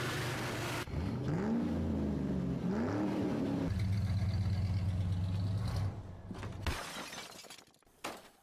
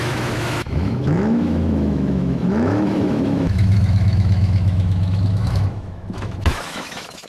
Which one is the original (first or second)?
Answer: first